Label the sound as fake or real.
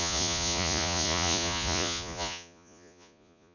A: fake